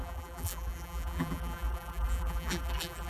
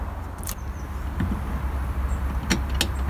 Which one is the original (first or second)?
second